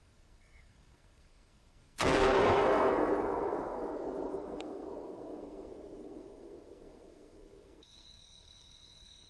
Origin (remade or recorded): remade